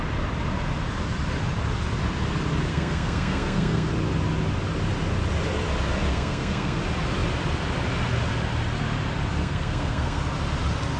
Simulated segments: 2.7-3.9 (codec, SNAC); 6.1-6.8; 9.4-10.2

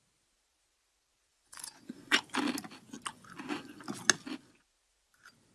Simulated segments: 1.3-2.2 (vocoder, Vocos); 3.1-3.8

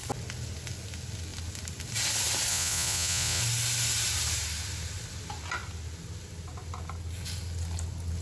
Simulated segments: 2.5-3.4 (vocoder, Vocos)

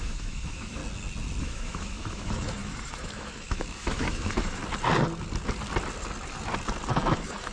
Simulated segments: 0.0-0.8 (autoencoder, DAC-VAE); 1.4-4.6; 6.9-7.5

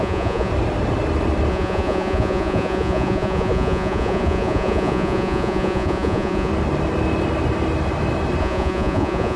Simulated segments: 0.0-0.5 (vocoder, Vocos); 1.5-6.5; 8.4-9.4